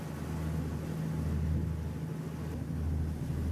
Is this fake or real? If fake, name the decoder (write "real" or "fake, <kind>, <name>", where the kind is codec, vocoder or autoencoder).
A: real